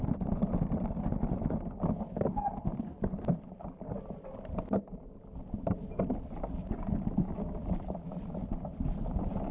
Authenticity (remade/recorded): recorded